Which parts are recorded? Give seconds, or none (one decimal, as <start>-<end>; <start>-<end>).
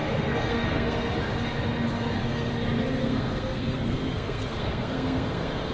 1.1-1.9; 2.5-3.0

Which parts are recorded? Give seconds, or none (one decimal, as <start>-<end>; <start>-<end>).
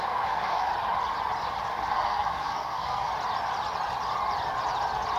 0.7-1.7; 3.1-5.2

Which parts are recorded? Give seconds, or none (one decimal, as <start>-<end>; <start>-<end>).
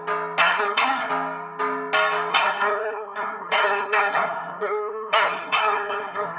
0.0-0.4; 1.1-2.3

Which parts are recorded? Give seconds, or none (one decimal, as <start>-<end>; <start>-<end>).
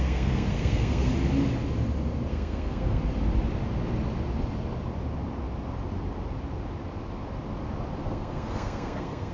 1.1-2.3; 3.0-8.0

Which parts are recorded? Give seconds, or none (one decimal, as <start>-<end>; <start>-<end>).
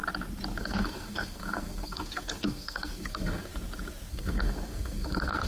0.0-0.6; 3.5-4.1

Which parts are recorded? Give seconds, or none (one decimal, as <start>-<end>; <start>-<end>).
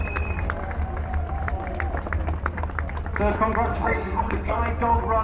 0.0-3.7; 4.6-5.2